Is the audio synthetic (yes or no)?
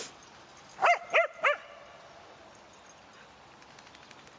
no